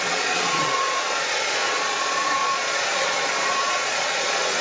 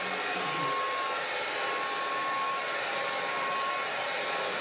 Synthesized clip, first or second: first